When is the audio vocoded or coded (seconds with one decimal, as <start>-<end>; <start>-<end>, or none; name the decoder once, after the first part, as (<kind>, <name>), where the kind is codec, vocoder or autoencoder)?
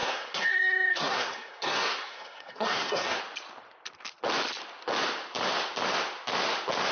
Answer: 0.0-3.2 (codec, SNAC)